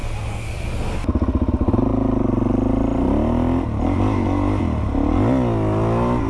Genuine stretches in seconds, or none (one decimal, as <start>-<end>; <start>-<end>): 0.0-6.3